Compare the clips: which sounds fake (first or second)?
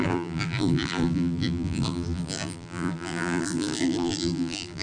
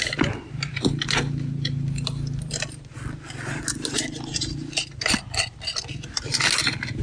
first